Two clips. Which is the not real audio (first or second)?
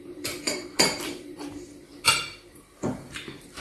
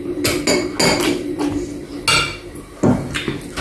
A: first